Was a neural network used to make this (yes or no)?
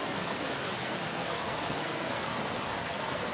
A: yes